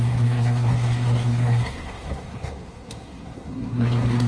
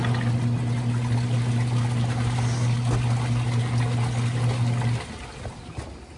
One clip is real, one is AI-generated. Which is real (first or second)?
second